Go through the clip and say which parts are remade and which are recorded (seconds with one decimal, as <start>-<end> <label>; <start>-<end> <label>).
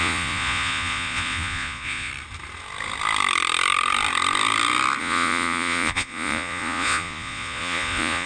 0.0-2.1 remade; 2.1-5.0 recorded; 5.0-8.3 remade